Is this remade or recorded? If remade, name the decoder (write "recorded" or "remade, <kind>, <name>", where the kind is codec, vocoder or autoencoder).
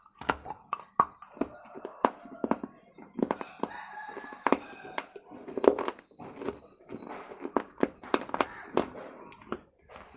recorded